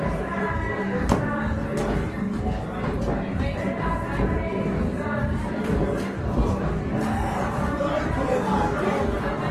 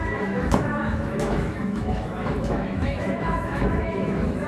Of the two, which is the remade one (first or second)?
second